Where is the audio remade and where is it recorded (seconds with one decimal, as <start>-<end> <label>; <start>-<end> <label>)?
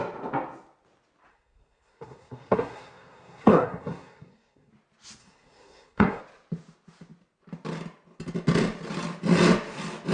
0.0-1.3 recorded; 1.3-4.7 remade; 4.7-5.2 recorded; 5.2-6.2 remade; 6.2-10.1 recorded